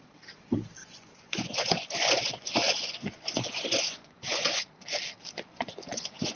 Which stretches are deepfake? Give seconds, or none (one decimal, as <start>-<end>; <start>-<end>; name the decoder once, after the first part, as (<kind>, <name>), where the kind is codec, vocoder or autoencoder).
0.8-4.6 (vocoder, Vocos); 5.5-6.4